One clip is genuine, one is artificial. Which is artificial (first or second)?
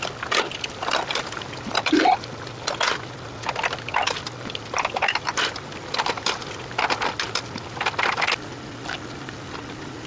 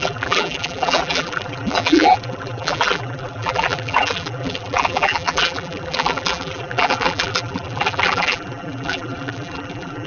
second